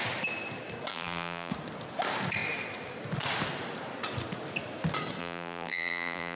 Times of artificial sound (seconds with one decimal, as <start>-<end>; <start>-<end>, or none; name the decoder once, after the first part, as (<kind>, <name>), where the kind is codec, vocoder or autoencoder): 0.9-1.5 (vocoder, BigVGAN v2); 5.2-6.4